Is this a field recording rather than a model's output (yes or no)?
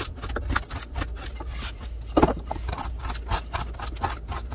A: yes